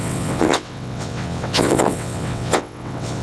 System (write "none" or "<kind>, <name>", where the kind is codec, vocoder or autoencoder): vocoder, WaveNeXt